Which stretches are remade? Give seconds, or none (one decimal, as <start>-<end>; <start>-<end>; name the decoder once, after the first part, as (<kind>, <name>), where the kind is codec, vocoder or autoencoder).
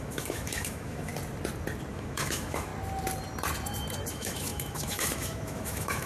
0.0-1.1 (autoencoder, DAC-VAE); 1.9-2.7; 4.1-6.1